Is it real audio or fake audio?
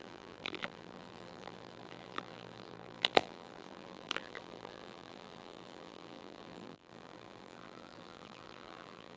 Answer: fake